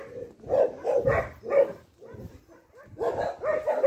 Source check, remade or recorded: recorded